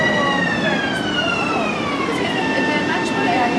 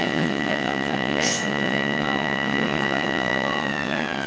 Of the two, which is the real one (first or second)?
first